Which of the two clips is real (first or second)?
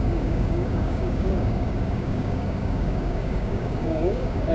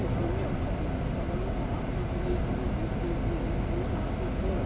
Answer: second